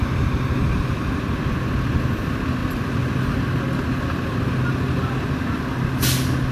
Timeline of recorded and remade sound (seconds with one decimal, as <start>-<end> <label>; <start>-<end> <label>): 0.0-6.5 recorded